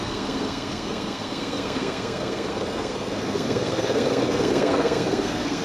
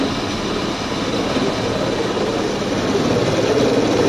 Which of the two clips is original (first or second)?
second